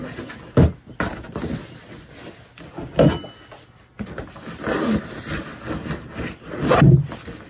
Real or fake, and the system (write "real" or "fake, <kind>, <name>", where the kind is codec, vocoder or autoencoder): real